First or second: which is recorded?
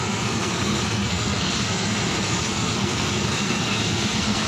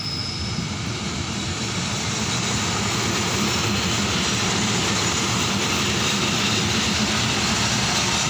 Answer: second